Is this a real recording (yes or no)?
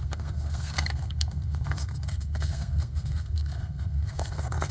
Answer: no